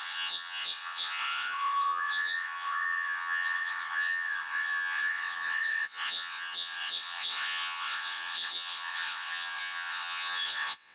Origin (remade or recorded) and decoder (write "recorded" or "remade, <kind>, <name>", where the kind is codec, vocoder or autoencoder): remade, vocoder, WaveNeXt